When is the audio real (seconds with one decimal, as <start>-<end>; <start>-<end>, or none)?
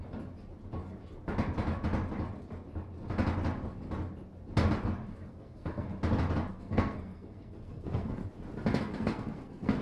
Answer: 0.0-5.1; 5.9-6.5; 8.2-8.8